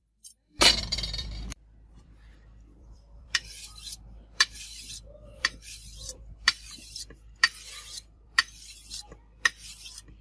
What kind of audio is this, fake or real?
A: fake